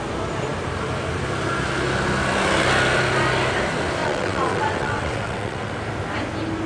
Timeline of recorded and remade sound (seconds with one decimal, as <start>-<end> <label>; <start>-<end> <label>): 0.0-4.0 recorded; 4.0-5.7 remade; 5.7-6.7 recorded